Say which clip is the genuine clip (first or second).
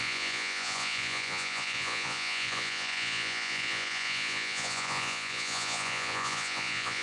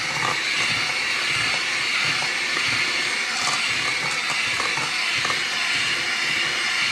second